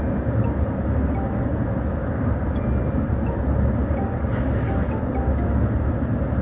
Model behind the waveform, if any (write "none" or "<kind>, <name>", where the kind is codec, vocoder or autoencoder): none